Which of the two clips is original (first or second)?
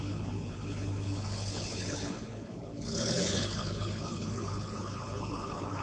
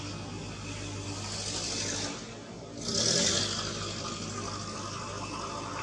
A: second